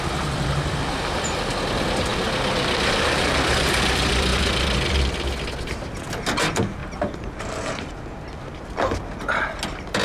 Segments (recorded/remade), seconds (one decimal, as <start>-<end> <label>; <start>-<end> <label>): 0.0-6.8 recorded; 6.8-7.7 remade; 7.7-10.0 recorded